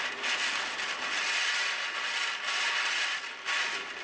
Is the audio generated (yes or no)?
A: no